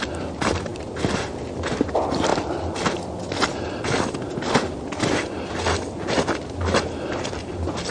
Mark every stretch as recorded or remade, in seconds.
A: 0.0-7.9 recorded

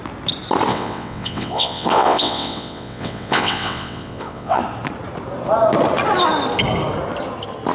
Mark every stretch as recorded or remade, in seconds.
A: 0.0-0.7 recorded; 0.7-4.6 remade; 4.6-7.7 recorded